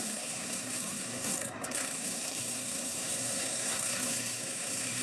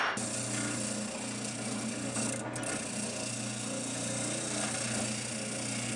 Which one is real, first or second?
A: second